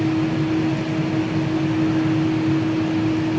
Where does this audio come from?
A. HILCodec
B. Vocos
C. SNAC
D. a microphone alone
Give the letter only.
D